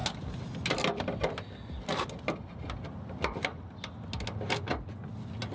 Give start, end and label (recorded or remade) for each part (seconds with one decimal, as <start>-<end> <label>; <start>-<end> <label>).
0.0-5.5 recorded